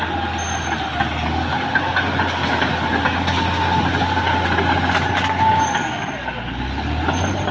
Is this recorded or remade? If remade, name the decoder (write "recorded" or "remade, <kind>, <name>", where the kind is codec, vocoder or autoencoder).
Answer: recorded